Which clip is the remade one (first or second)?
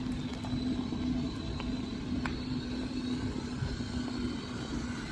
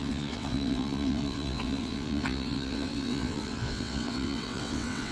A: second